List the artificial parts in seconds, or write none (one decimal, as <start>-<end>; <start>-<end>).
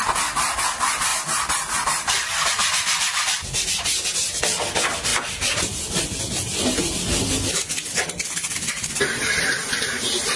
1.1-4.4; 5.1-8.7